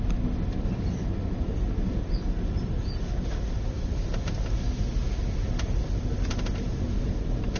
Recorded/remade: recorded